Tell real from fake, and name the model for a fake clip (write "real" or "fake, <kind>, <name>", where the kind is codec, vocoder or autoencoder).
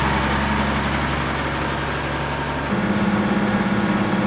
real